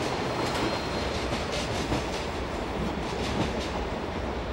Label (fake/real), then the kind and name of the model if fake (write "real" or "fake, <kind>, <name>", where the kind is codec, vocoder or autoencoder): fake, vocoder, BigVGAN v2